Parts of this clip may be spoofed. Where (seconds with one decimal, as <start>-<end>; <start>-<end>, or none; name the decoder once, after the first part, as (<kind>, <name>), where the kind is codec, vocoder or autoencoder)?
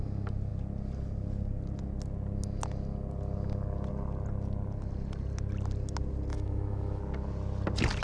6.3-7.0 (autoencoder, DAC-VAE)